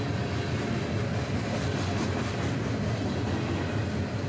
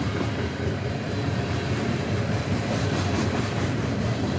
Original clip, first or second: first